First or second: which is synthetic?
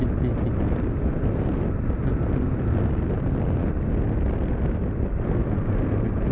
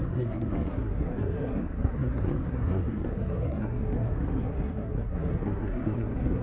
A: second